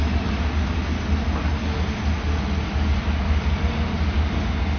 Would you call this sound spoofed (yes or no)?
no